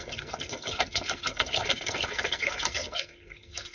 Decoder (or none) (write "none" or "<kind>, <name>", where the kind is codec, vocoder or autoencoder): codec, SNAC